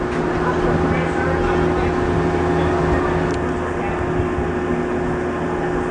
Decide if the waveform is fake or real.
real